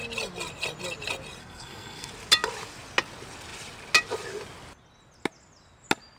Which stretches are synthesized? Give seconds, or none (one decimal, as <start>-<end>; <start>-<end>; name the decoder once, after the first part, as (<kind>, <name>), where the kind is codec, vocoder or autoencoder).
1.4-2.1 (codec, SNAC)